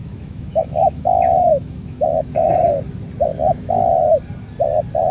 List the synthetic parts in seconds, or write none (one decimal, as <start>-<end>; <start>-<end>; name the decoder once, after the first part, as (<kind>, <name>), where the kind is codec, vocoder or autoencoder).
0.0-2.5 (autoencoder, DAC-VAE); 3.3-3.9